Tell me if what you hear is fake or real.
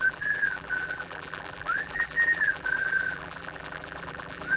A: fake